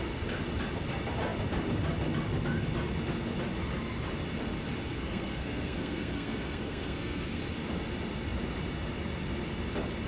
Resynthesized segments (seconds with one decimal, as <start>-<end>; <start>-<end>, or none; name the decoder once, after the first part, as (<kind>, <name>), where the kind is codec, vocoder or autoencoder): 4.9-7.4 (codec, SNAC)